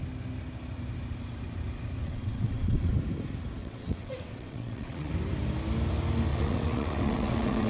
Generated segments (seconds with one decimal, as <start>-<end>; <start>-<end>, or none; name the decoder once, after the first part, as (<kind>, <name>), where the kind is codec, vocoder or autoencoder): 2.0-2.9 (vocoder, WaveNeXt); 3.6-5.1; 6.3-7.7